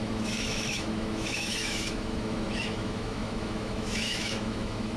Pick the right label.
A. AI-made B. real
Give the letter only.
A